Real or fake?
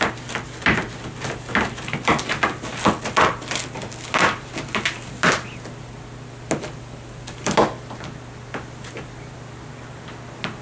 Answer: real